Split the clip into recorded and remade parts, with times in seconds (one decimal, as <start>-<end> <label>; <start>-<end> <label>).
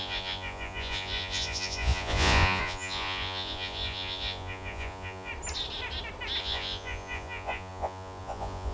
0.0-5.3 remade; 5.3-6.4 recorded; 6.4-8.7 remade